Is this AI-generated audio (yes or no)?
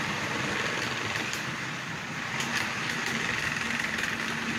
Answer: no